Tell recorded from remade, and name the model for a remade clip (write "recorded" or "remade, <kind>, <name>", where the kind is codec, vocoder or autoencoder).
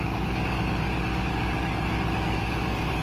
remade, codec, DAC